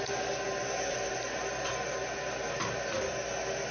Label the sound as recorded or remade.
recorded